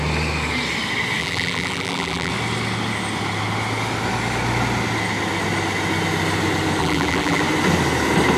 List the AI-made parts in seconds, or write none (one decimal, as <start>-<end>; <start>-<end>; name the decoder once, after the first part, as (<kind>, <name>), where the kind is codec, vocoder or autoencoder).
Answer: 1.2-2.3 (vocoder, BigVGAN v2); 6.8-7.4